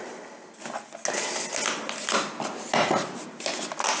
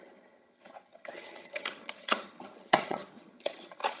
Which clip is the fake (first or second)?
second